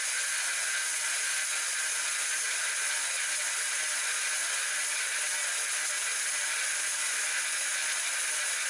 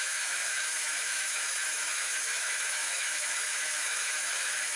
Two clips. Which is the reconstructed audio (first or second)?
second